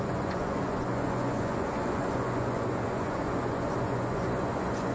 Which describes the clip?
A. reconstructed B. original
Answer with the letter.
A